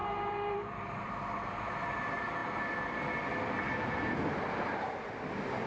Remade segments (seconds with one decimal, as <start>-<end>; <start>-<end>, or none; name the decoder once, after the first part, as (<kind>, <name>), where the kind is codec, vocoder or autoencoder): 0.0-1.1 (vocoder, BigVGAN v2)